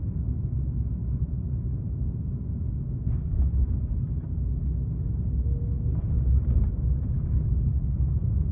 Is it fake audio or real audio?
real